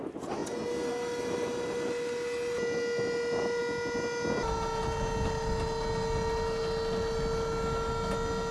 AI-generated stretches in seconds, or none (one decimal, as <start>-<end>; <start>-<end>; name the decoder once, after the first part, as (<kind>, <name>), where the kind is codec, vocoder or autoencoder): none